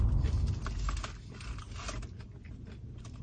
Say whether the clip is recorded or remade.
recorded